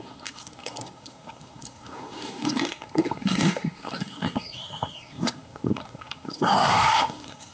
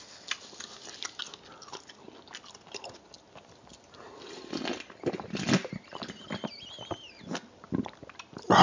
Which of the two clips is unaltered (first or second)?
second